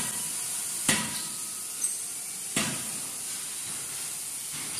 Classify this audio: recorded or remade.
recorded